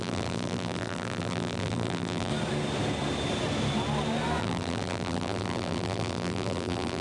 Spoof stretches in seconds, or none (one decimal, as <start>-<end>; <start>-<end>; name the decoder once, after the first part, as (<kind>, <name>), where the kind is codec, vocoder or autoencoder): 0.0-2.3 (vocoder, BigVGAN v2); 4.4-7.0